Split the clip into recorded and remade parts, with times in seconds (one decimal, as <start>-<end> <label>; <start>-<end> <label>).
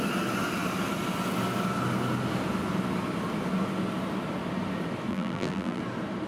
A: 0.0-5.1 recorded; 5.1-5.8 remade; 5.8-6.3 recorded